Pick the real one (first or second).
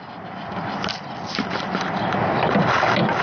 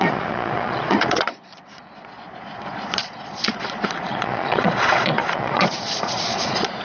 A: first